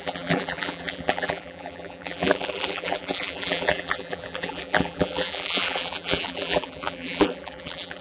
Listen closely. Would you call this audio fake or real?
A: fake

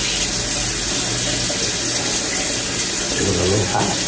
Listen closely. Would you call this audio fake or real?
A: real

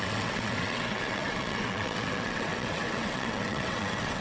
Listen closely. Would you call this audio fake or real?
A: fake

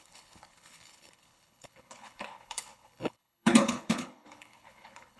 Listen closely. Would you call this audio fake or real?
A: fake